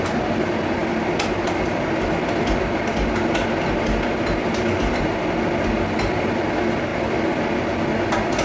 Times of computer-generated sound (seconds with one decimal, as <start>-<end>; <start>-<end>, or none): none